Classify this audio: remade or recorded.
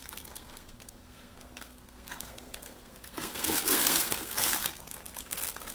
remade